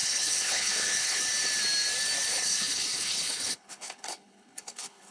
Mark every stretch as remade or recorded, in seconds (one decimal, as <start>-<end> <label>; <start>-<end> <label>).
0.0-1.2 remade; 1.2-2.3 recorded; 2.3-5.1 remade

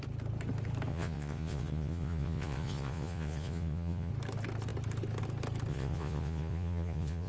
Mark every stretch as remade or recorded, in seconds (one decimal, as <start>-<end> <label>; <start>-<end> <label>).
0.0-0.9 recorded; 0.9-4.1 remade; 4.1-5.7 recorded; 5.7-7.3 remade